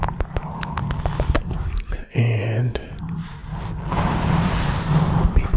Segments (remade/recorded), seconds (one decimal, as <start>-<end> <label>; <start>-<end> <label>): 0.0-5.6 recorded